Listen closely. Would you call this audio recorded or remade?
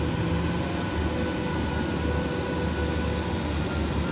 recorded